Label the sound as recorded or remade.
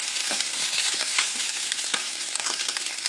remade